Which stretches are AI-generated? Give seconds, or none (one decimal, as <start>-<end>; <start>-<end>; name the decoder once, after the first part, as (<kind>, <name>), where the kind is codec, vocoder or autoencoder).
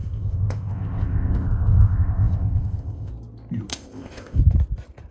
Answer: 0.0-3.1 (codec, ZipCodec); 3.7-4.4